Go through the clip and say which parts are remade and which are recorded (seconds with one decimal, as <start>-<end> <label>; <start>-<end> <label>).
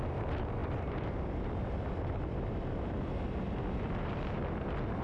0.0-5.0 recorded